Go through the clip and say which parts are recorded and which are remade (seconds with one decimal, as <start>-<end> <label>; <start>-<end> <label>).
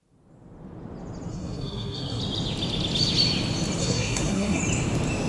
0.0-1.3 recorded; 1.3-2.2 remade; 2.2-3.8 recorded; 3.8-4.6 remade; 4.6-5.3 recorded